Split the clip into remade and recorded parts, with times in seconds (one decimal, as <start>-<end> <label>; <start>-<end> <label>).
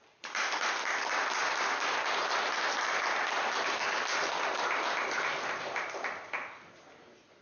0.0-7.4 recorded